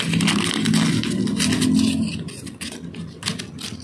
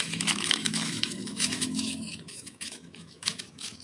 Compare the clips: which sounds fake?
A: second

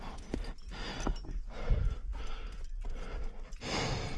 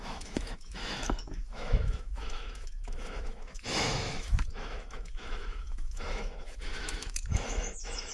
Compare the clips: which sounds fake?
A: second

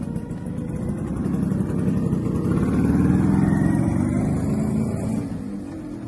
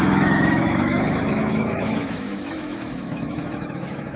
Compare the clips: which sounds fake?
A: second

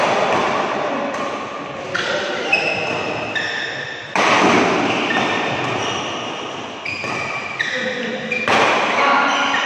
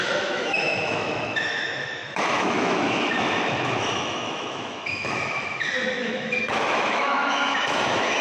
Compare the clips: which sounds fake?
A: second